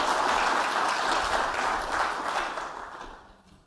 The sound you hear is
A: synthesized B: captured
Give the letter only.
B